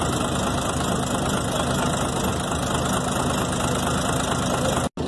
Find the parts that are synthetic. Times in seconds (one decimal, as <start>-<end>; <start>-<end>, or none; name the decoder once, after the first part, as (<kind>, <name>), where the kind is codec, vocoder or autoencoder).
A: none